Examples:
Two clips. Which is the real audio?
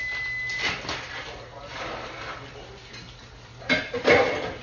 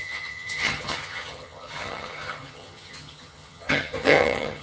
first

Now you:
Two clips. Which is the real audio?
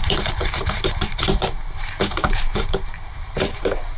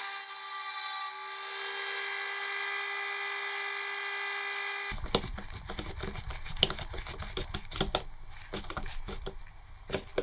second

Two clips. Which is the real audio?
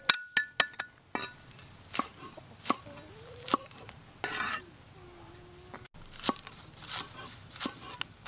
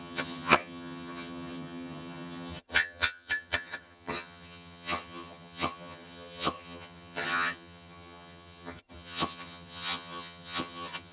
first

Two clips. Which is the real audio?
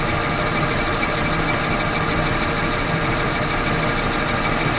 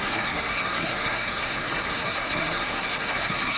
first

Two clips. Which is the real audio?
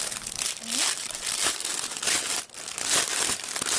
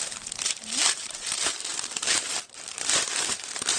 first